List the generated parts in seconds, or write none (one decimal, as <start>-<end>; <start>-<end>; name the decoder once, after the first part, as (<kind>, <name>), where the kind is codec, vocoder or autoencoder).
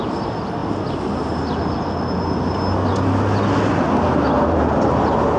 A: none